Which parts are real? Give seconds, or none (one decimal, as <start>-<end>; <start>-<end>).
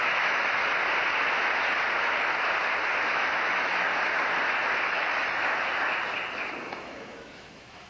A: 0.6-3.1; 3.9-4.8; 5.9-6.6